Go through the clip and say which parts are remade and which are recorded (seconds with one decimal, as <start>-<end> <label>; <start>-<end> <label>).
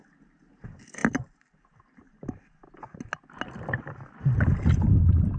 0.0-5.4 recorded